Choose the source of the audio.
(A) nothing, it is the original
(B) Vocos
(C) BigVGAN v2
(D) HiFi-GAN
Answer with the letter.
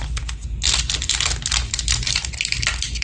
A